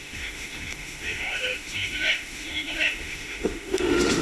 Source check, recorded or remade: remade